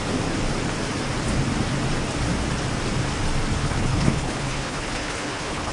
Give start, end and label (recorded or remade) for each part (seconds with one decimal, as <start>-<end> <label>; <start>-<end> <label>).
0.0-3.6 recorded; 3.6-5.7 remade